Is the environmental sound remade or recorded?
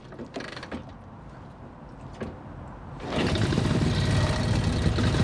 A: recorded